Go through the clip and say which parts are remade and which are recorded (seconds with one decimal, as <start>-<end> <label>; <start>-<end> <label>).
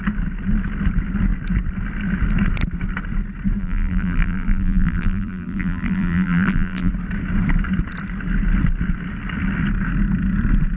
0.0-3.6 recorded; 3.6-6.9 remade; 6.9-10.8 recorded